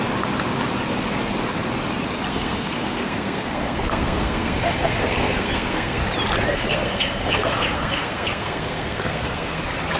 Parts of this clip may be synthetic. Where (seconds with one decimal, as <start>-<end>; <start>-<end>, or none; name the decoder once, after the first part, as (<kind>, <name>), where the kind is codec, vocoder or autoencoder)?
2.3-6.0 (codec, SNAC); 6.5-9.6